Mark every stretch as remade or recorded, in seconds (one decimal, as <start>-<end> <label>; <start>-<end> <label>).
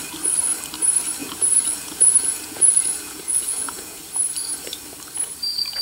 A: 0.0-1.2 recorded; 1.2-4.0 remade; 4.0-5.8 recorded